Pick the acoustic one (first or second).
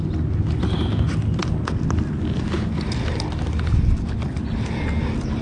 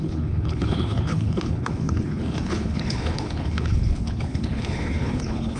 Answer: first